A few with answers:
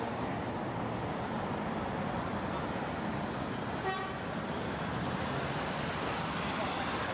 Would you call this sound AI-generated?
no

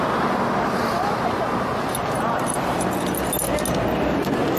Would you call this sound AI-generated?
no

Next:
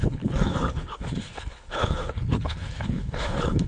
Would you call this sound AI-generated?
yes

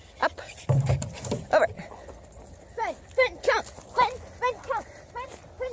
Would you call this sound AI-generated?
no